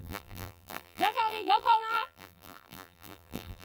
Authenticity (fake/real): fake